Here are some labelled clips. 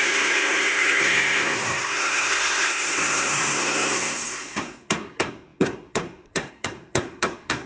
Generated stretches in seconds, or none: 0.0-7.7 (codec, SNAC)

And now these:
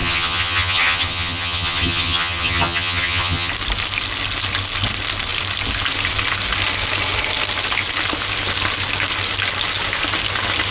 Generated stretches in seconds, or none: 0.0-3.5 (vocoder, HiFi-GAN)

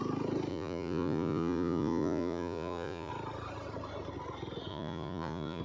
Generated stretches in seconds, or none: 0.5-3.1 (vocoder, Vocos); 4.7-5.6

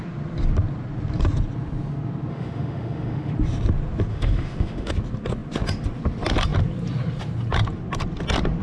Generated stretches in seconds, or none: 2.3-3.3 (autoencoder, DAC-VAE); 4.1-4.9

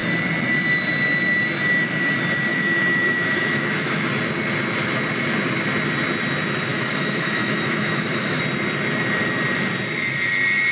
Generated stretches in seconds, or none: 2.5-4.1 (autoencoder, DAC-VAE); 6.7-8.4

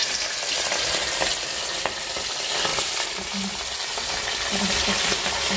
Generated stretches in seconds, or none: none

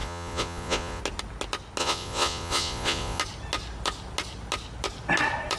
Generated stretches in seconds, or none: 0.0-1.0 (vocoder, Vocos); 1.8-3.2

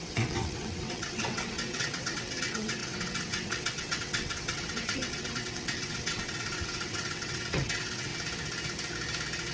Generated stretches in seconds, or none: 0.0-8.1 (vocoder, WaveNeXt)